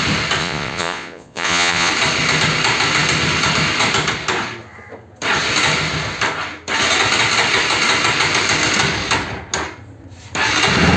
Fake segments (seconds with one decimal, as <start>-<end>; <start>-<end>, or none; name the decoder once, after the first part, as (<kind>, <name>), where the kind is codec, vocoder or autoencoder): 0.4-1.9 (vocoder, Vocos)

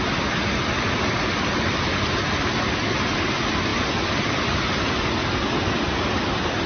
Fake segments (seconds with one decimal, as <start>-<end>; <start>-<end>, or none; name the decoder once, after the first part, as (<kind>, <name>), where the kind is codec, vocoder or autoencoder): none

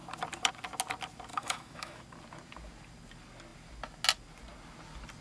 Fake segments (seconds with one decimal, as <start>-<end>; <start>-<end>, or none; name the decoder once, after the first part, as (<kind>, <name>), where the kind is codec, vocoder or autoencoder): 1.3-2.0 (autoencoder, DAC-VAE)